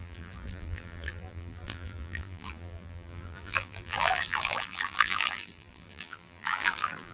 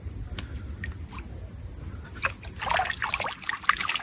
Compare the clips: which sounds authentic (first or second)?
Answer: second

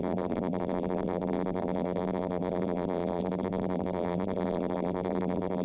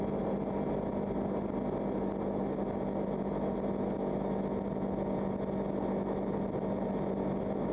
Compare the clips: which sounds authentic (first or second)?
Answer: second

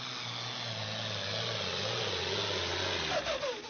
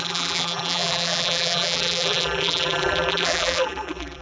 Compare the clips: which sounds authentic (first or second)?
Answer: first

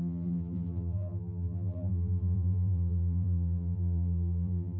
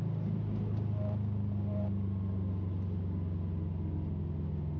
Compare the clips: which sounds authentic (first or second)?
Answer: second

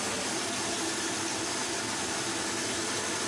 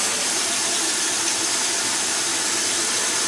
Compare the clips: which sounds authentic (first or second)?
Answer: first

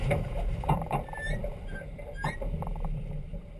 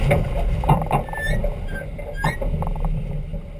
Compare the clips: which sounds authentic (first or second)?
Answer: second